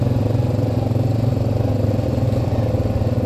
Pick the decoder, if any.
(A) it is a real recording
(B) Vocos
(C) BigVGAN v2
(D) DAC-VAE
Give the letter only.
A